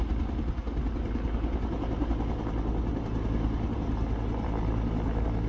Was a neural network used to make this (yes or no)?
no